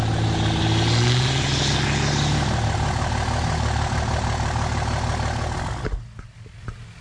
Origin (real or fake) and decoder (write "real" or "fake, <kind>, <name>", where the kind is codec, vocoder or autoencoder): real